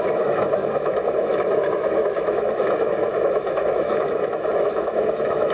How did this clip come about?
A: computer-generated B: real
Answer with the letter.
A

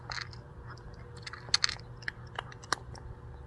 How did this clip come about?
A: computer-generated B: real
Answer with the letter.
B